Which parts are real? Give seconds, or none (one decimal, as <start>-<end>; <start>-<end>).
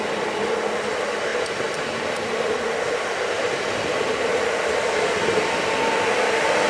0.0-1.3; 3.6-6.7